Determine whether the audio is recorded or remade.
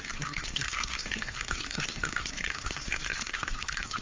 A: remade